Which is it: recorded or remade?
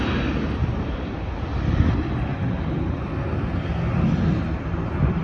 recorded